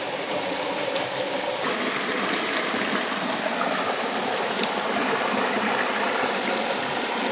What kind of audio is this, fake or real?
real